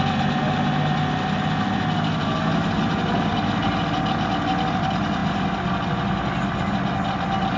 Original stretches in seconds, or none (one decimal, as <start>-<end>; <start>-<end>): 0.0-7.6